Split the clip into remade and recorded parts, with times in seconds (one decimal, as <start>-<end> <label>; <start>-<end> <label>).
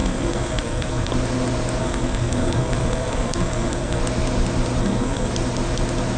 0.0-1.1 remade; 1.1-1.8 recorded; 1.8-4.0 remade; 4.0-4.8 recorded; 4.8-5.3 remade; 5.3-6.2 recorded